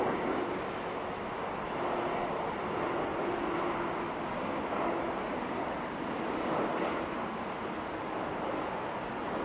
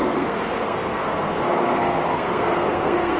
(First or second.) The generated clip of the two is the second